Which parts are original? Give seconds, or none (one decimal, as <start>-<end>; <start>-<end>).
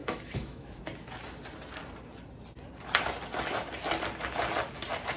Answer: 0.8-5.2